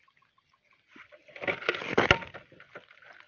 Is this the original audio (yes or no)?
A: yes